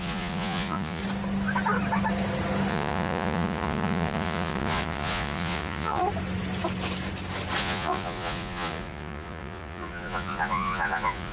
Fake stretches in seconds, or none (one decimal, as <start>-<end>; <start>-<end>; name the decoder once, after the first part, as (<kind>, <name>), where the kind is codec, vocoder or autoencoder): 0.0-1.0 (vocoder, Vocos); 2.7-6.0; 7.6-11.3